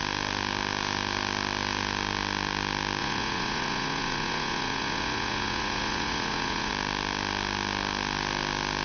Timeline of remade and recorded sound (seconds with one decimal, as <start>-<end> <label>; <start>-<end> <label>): 0.0-3.0 recorded; 3.0-6.7 remade; 6.7-8.8 recorded